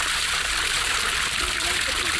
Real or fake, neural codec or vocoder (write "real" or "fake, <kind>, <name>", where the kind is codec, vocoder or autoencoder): real